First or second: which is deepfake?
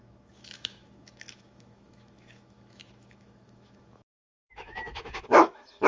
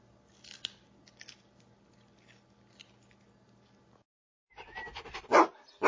first